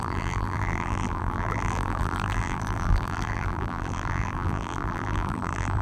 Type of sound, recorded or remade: remade